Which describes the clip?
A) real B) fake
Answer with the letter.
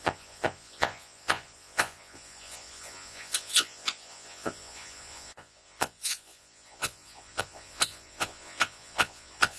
B